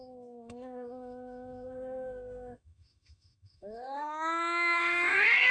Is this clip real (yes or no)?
no